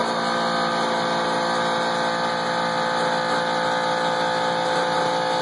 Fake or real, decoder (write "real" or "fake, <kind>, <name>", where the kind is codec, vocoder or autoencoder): real